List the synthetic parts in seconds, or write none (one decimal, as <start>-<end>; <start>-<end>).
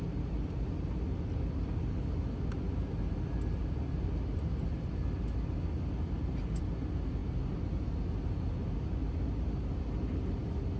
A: none